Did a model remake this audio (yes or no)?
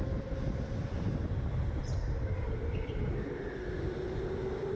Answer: no